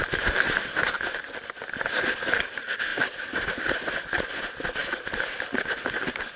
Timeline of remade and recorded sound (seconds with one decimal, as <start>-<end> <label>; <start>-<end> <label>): 0.0-0.8 remade; 0.8-6.4 recorded